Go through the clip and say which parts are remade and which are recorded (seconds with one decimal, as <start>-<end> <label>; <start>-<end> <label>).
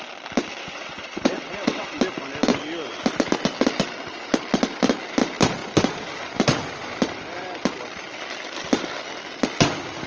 0.0-0.6 recorded; 0.6-2.0 remade; 2.0-10.1 recorded